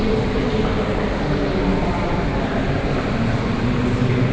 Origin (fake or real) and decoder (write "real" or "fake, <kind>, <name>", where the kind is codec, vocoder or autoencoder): real